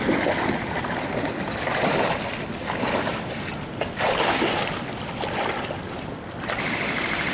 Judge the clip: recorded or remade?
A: recorded